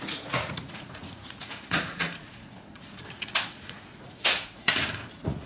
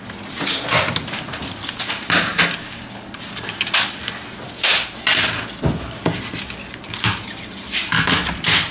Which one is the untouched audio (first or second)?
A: second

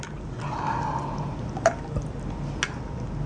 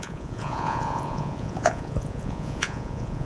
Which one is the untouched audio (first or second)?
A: first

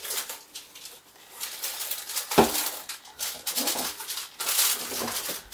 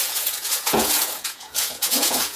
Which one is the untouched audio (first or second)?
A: first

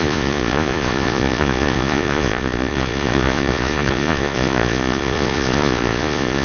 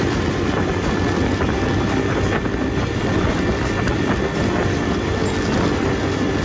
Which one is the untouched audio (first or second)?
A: second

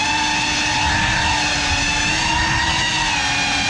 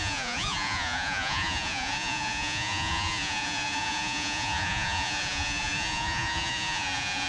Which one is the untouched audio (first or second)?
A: first